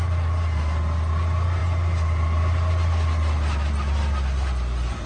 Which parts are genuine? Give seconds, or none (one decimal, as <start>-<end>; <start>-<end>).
0.0-5.1